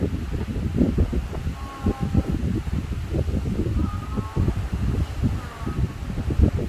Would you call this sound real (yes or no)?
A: yes